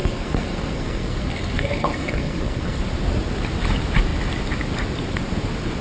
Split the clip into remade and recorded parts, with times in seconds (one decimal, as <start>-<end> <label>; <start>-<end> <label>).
0.0-2.8 remade; 2.8-5.8 recorded

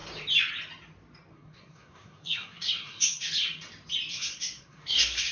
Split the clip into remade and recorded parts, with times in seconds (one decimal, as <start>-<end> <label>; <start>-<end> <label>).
0.0-1.3 recorded; 1.3-3.3 remade; 3.3-4.1 recorded; 4.1-5.3 remade

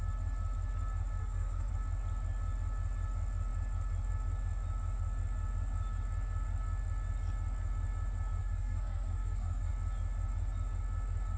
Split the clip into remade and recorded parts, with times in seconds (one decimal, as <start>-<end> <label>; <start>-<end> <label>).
0.0-1.2 recorded; 1.2-1.7 remade; 1.7-8.4 recorded; 8.4-9.7 remade; 9.7-11.4 recorded

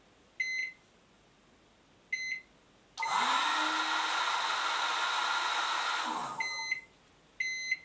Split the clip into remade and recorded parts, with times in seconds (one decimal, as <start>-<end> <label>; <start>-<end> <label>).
0.0-7.8 recorded

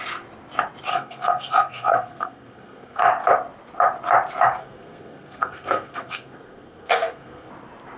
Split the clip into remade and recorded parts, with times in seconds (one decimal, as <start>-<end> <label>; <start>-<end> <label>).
0.0-0.9 recorded; 0.9-3.1 remade; 3.1-4.6 recorded; 4.6-7.5 remade; 7.5-8.0 recorded

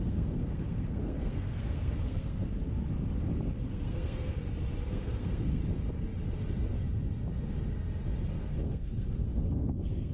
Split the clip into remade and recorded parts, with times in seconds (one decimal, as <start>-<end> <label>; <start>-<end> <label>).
0.0-2.5 remade; 2.5-3.6 recorded; 3.6-4.3 remade; 4.3-4.9 recorded; 4.9-5.6 remade; 5.6-8.3 recorded; 8.3-10.1 remade